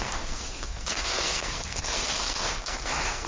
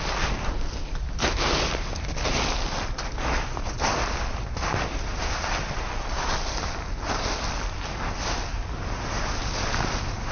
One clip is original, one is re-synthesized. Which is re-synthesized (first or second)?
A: first